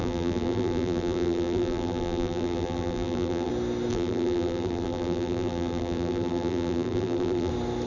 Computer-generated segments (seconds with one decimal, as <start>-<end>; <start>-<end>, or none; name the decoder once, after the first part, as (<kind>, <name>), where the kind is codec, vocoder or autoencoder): 0.0-3.5 (vocoder, BigVGAN v2); 3.9-7.5